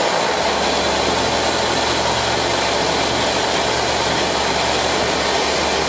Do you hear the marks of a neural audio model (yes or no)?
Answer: no